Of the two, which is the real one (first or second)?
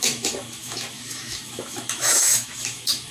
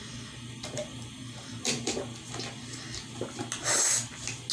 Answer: second